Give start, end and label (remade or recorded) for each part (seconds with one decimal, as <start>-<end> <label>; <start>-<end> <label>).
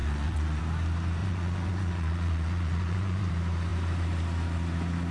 0.0-0.6 remade; 0.6-1.2 recorded; 1.2-3.3 remade; 3.3-5.1 recorded